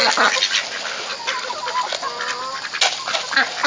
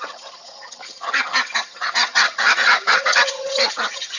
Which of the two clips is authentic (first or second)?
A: first